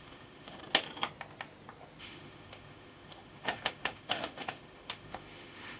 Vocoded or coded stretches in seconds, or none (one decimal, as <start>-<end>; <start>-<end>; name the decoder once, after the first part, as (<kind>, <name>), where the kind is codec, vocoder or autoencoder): 0.0-0.6 (autoencoder, DAC-VAE); 2.0-5.8